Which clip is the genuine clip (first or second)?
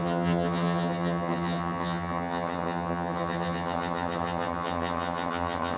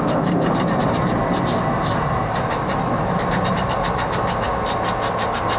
second